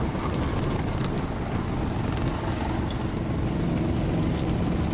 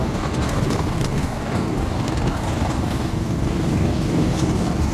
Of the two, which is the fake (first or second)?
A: second